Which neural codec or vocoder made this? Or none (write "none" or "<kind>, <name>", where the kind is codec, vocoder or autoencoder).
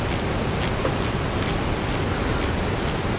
none